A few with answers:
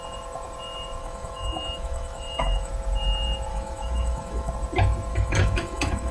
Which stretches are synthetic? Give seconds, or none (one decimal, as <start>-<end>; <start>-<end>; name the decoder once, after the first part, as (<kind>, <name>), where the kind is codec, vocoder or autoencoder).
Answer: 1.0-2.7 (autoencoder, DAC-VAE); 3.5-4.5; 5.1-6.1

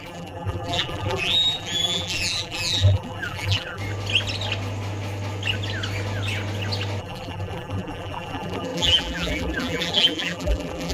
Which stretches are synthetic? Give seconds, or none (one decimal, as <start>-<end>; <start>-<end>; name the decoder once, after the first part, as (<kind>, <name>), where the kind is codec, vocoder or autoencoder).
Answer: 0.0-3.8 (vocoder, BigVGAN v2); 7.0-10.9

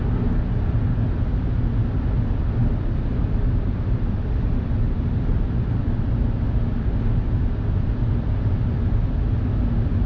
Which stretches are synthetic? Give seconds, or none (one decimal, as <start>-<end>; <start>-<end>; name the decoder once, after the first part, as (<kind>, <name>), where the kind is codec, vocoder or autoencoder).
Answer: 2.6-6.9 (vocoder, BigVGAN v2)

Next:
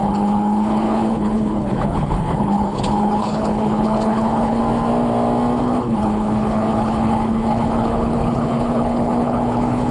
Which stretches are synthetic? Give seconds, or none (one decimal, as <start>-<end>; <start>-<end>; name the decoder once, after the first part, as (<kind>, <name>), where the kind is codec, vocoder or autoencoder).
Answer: 0.0-4.6 (codec, HILCodec); 5.6-9.9

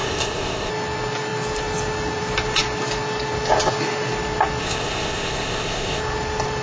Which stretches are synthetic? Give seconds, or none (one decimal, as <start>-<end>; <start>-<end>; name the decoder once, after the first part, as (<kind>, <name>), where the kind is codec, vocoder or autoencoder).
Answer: 0.0-0.7 (codec, ZipCodec); 4.6-6.0